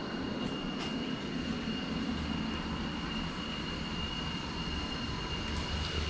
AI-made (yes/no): no